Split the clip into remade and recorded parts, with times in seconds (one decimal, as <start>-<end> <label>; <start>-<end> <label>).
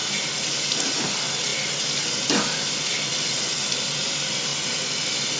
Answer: 0.0-5.4 recorded